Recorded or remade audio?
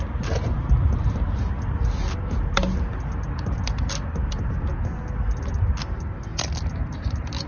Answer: recorded